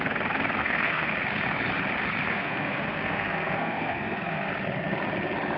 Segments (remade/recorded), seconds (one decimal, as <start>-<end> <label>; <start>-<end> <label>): 0.0-0.6 recorded; 0.6-1.1 remade; 1.1-2.3 recorded; 2.3-4.5 remade; 4.5-5.6 recorded